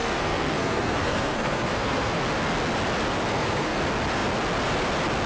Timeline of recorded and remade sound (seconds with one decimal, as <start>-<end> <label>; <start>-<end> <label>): 0.0-2.2 remade; 2.2-3.3 recorded; 3.3-3.8 remade; 3.8-5.3 recorded